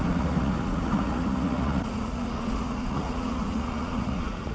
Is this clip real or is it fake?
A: fake